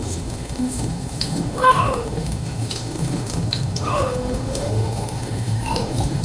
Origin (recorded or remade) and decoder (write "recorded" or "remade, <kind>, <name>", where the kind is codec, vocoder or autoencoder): remade, autoencoder, DAC-VAE